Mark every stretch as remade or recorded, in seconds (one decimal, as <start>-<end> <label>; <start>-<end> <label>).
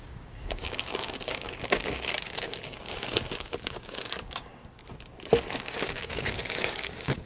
0.0-4.5 remade; 4.5-5.5 recorded; 5.5-7.3 remade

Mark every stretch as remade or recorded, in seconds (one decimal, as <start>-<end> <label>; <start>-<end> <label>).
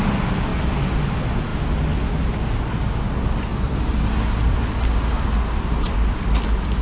0.0-6.8 recorded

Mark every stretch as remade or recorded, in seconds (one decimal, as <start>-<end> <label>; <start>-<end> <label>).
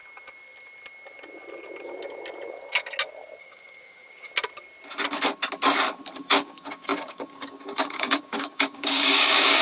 0.0-3.4 recorded; 3.4-4.3 remade; 4.3-6.2 recorded; 6.2-9.6 remade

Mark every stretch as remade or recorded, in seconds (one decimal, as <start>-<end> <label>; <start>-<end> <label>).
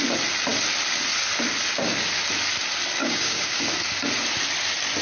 0.0-3.0 recorded; 3.0-3.6 remade; 3.6-5.0 recorded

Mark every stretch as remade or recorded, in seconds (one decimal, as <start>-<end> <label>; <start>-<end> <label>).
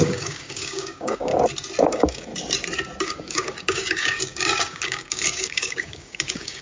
0.0-1.3 remade; 1.3-1.8 recorded; 1.8-2.3 remade; 2.3-3.0 recorded; 3.0-6.6 remade